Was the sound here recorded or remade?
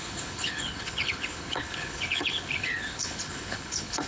remade